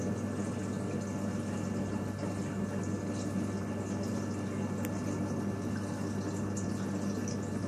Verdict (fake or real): real